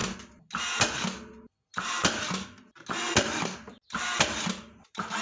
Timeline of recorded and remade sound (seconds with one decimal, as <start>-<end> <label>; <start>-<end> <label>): 0.0-5.2 recorded

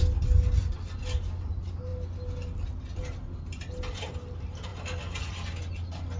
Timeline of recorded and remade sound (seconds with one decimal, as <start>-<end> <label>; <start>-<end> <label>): 0.0-6.2 recorded

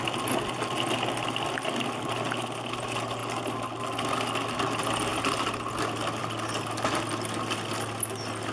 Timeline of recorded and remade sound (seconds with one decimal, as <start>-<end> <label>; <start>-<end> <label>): 0.0-8.5 recorded